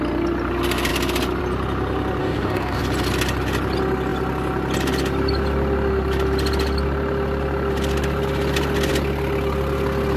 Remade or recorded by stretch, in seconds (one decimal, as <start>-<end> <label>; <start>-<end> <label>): 0.0-2.2 recorded; 2.2-2.8 remade; 2.8-10.2 recorded